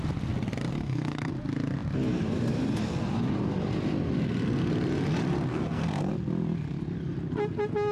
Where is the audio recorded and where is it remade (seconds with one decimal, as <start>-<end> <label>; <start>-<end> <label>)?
0.0-0.7 recorded; 0.7-1.3 remade; 1.3-5.5 recorded; 5.5-6.1 remade; 6.1-7.9 recorded